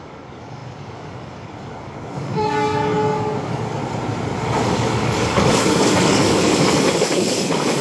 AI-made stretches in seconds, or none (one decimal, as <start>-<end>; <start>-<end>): 0.0-3.8; 4.4-7.8